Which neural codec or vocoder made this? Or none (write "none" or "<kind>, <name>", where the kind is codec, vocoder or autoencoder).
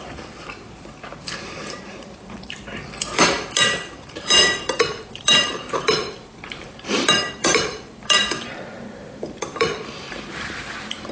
vocoder, BigVGAN v2